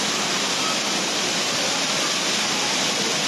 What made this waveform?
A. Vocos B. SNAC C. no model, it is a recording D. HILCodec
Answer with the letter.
C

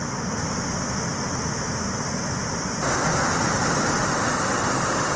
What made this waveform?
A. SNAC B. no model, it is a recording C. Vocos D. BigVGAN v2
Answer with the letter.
B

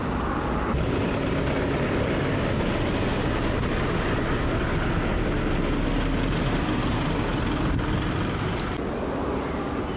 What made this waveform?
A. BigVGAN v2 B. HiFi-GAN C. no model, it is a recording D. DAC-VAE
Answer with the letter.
C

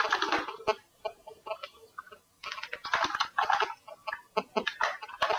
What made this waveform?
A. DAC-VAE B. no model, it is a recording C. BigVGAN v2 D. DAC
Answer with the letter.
B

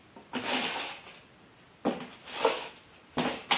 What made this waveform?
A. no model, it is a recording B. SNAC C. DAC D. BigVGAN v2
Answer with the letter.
A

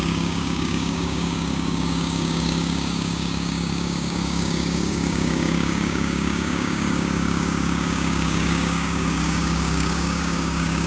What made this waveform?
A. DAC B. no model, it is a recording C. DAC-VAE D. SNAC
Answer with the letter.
A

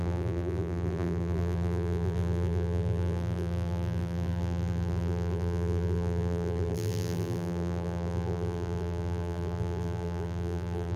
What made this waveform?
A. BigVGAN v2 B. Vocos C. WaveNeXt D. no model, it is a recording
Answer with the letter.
A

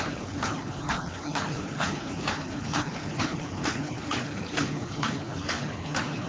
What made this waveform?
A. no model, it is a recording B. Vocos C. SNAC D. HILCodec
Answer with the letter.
D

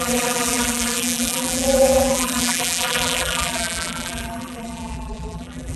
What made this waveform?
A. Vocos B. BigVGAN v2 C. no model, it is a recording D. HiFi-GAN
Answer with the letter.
B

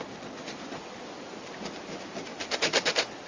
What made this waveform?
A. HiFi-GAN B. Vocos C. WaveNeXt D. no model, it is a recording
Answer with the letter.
D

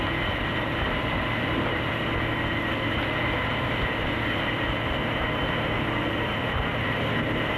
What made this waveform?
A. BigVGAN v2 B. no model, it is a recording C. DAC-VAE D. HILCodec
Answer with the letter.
A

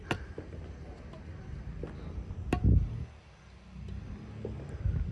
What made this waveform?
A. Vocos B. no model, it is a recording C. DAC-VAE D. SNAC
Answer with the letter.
B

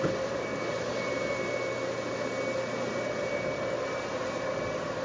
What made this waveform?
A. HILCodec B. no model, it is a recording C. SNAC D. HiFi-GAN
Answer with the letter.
B